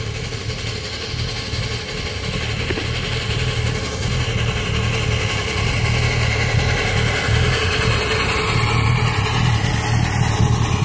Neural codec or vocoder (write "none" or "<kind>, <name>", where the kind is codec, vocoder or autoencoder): none